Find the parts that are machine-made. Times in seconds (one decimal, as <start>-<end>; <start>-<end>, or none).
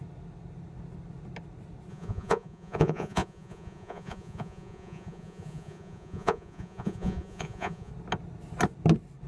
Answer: 1.9-7.9